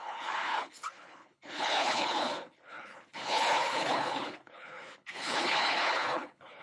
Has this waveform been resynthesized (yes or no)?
yes